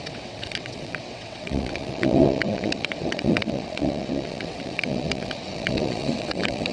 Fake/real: fake